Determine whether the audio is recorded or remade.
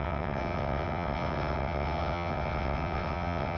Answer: remade